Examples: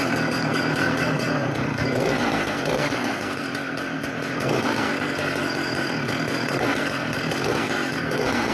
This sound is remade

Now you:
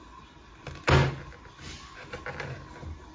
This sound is recorded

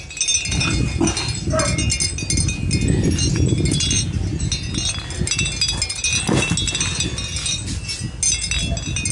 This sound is recorded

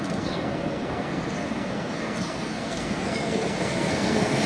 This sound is remade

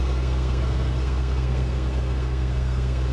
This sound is remade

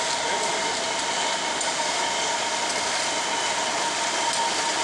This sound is recorded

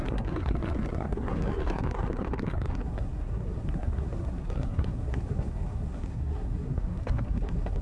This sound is remade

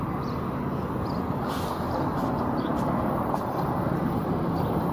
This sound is recorded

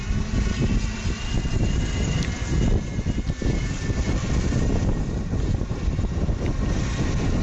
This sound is recorded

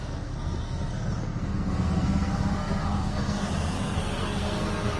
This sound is remade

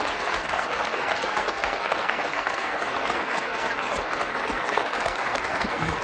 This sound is remade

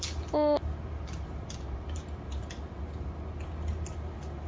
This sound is recorded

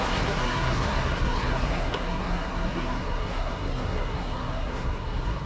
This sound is remade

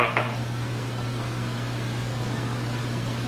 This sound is remade